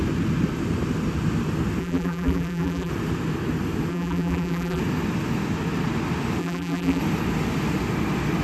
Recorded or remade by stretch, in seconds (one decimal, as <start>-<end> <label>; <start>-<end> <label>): 0.0-1.8 recorded; 1.8-2.9 remade; 2.9-3.9 recorded; 3.9-4.8 remade; 4.8-6.4 recorded; 6.4-7.0 remade; 7.0-8.4 recorded

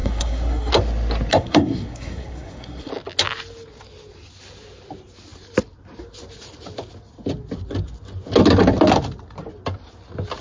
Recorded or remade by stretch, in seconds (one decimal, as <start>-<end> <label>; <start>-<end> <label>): 0.0-0.7 remade; 0.7-1.3 recorded; 1.3-2.9 remade; 2.9-10.4 recorded

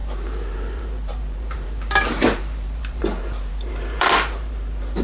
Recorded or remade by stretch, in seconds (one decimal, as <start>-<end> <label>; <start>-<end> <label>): 0.0-5.0 remade

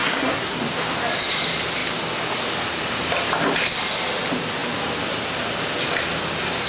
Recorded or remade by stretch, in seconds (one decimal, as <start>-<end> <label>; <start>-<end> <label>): 0.0-0.6 remade; 0.6-6.7 recorded